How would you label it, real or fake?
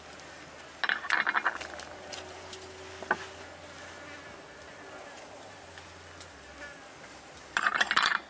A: real